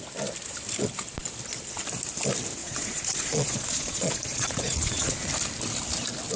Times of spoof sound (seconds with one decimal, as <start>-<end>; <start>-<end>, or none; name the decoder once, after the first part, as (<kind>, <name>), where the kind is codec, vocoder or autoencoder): 2.6-5.3 (vocoder, Vocos)